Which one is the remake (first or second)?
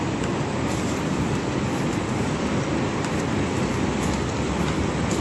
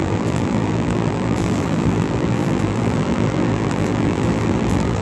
second